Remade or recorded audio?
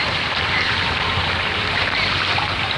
remade